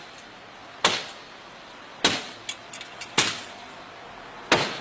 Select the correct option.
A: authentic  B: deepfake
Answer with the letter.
A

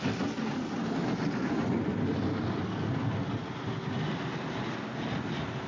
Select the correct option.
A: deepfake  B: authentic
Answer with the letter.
B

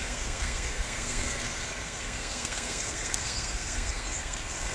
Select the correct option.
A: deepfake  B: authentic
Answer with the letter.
A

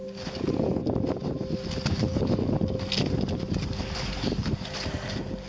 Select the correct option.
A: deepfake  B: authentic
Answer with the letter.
B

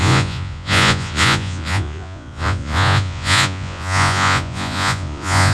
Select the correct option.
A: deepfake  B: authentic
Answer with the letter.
A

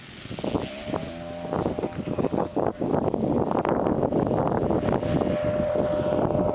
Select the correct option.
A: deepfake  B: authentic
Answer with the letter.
B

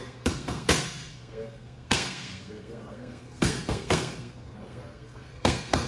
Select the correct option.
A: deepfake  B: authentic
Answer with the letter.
A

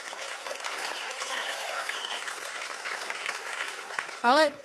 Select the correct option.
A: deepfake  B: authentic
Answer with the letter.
A